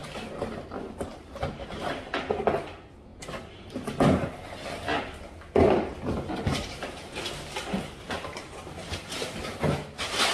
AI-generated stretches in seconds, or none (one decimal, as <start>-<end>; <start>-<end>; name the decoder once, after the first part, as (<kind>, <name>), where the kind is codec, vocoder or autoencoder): 0.0-1.9 (vocoder, BigVGAN v2); 5.9-10.3